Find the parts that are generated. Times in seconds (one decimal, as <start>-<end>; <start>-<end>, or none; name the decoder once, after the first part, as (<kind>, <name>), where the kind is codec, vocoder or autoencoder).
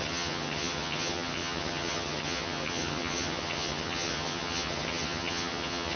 0.0-6.0 (vocoder, HiFi-GAN)